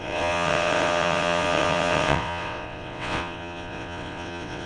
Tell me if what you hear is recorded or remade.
remade